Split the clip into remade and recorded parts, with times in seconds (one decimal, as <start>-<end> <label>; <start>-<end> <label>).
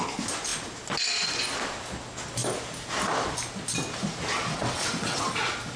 0.0-4.5 recorded; 4.5-5.3 remade; 5.3-5.8 recorded